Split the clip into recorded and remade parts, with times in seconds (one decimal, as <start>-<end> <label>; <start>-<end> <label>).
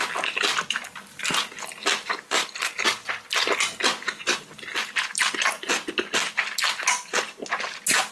0.0-8.1 recorded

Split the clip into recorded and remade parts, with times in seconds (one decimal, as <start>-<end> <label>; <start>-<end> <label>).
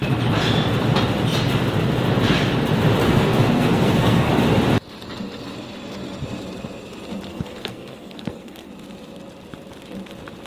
0.0-3.0 recorded; 3.0-4.3 remade; 4.3-7.3 recorded; 7.3-8.7 remade; 8.7-10.5 recorded